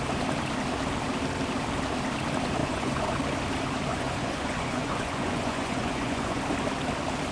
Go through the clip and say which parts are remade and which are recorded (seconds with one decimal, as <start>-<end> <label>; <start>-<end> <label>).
0.0-2.6 recorded; 2.6-3.2 remade; 3.2-3.9 recorded; 3.9-6.4 remade; 6.4-7.3 recorded